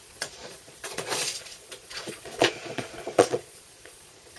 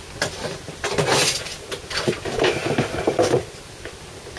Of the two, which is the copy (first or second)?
first